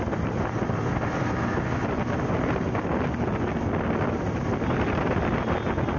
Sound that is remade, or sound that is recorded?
recorded